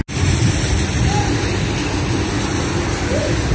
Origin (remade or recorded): recorded